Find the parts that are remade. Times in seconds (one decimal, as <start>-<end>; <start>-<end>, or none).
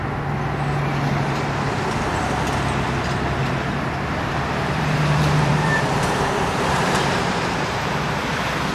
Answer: 3.4-8.2